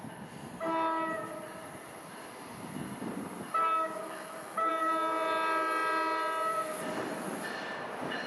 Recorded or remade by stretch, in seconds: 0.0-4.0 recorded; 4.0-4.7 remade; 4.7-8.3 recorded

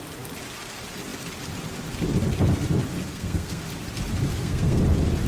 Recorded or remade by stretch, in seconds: 0.0-3.1 recorded; 3.1-3.6 remade; 3.6-4.3 recorded; 4.3-4.8 remade; 4.8-5.3 recorded

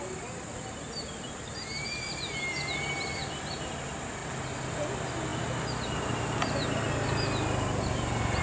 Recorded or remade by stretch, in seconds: 0.0-8.4 recorded

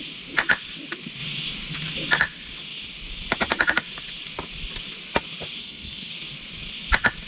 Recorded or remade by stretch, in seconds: 0.0-5.6 recorded; 5.6-6.1 remade; 6.1-7.3 recorded

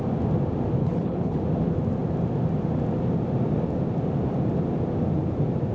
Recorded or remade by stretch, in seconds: 0.0-0.8 recorded; 0.8-1.4 remade; 1.4-5.7 recorded